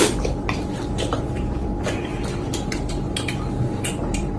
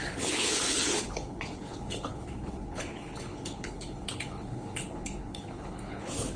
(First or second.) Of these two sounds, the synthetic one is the second